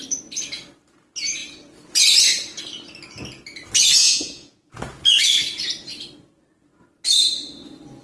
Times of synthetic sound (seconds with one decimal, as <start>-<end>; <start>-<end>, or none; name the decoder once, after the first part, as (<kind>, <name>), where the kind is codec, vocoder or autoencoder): 4.0-4.7 (vocoder, Vocos)

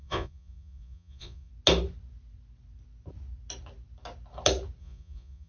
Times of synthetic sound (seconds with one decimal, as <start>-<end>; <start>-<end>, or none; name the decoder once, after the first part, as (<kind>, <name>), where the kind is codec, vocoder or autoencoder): 0.0-1.5 (vocoder, Vocos); 4.8-5.5

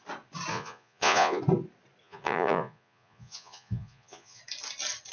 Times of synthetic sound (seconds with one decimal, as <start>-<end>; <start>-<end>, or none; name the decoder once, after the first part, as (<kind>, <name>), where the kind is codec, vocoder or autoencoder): 0.5-1.4 (vocoder, Vocos); 2.0-4.4

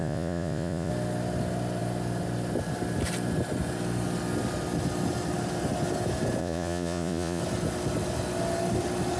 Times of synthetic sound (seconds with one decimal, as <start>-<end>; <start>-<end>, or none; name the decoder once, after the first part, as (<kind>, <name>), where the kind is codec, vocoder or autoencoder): 0.0-0.9 (vocoder, Vocos); 6.4-7.4

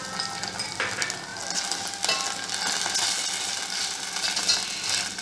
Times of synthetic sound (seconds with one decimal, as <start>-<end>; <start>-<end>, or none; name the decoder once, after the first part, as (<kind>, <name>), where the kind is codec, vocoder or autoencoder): none